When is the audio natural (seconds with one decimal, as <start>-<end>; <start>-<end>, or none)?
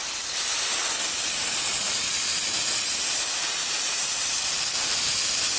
0.0-5.6